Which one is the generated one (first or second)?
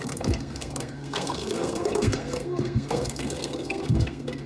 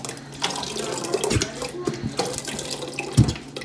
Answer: first